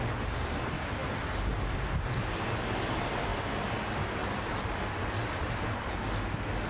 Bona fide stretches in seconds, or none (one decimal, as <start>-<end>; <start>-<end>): 0.0-6.7